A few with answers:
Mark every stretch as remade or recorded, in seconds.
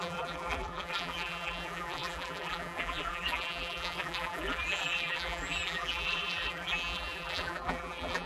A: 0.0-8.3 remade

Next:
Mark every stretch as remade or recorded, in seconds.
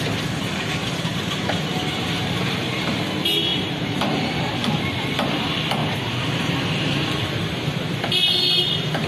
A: 0.0-0.4 recorded; 0.4-2.2 remade; 2.2-3.5 recorded; 3.5-4.7 remade; 4.7-5.8 recorded; 5.8-8.1 remade; 8.1-9.1 recorded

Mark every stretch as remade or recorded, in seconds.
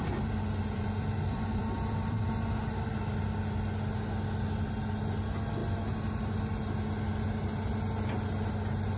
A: 0.0-2.2 remade; 2.2-9.0 recorded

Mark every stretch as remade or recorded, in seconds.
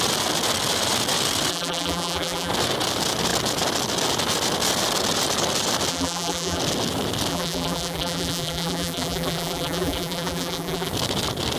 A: 0.0-1.5 recorded; 1.5-2.5 remade; 2.5-5.9 recorded; 5.9-6.6 remade; 6.6-7.3 recorded; 7.3-10.9 remade; 10.9-11.6 recorded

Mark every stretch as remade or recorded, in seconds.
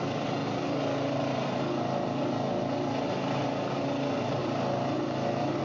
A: 0.0-4.4 recorded; 4.4-5.6 remade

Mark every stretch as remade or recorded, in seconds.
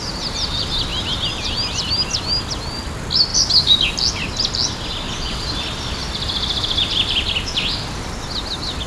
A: 0.0-8.9 recorded